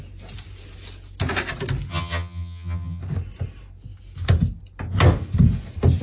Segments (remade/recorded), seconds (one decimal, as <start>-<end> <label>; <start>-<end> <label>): 0.0-1.9 recorded; 1.9-3.0 remade; 3.0-6.0 recorded